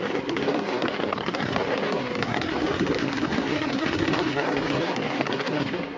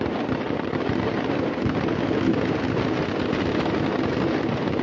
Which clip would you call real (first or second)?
second